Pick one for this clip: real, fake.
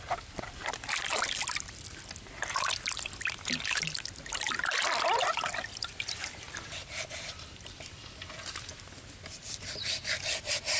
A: real